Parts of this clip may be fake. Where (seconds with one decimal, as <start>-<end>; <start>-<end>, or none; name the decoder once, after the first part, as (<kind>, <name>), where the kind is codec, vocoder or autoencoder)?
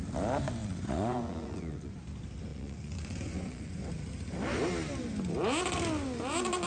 0.6-1.9 (vocoder, Vocos); 2.5-3.7